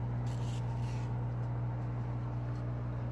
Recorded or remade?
recorded